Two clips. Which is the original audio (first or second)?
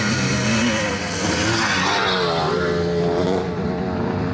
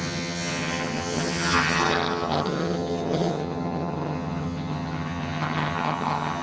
first